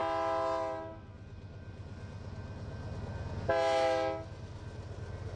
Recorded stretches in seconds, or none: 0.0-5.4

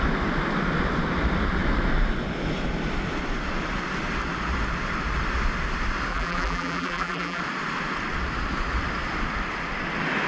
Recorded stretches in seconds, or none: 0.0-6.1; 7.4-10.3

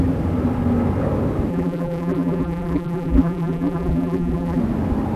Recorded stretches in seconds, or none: 0.0-1.5; 4.6-5.2

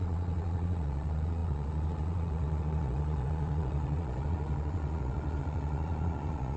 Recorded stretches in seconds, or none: none

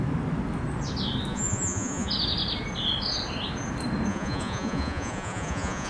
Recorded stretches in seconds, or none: 0.0-1.3; 2.1-4.1